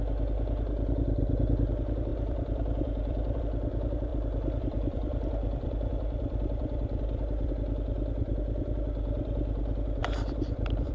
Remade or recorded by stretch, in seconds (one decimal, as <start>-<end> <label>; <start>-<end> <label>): 0.0-2.1 recorded; 2.1-3.4 remade; 3.4-4.1 recorded; 4.1-7.5 remade; 7.5-10.0 recorded; 10.0-10.9 remade